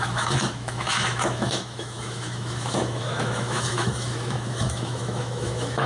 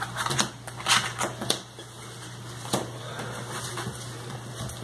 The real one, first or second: second